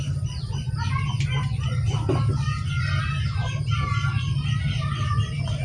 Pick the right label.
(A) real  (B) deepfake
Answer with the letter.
A